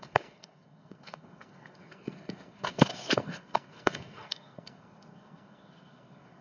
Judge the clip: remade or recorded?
remade